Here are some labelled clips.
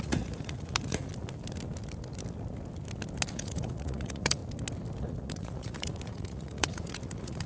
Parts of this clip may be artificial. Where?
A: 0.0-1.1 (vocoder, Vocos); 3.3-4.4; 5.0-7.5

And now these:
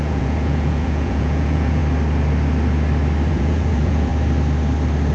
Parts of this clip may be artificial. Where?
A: 0.0-1.8 (vocoder, Vocos); 3.3-4.1

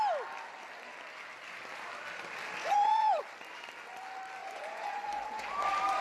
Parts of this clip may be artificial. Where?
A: 2.6-3.2 (vocoder, Vocos); 4.4-5.5

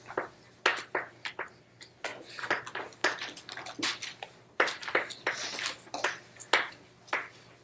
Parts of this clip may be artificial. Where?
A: 2.1-2.6 (vocoder, Vocos)

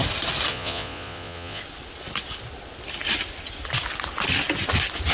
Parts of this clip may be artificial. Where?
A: 0.5-1.6 (vocoder, Vocos)